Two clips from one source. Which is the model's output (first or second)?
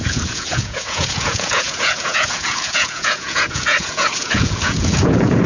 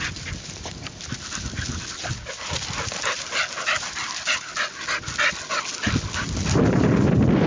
first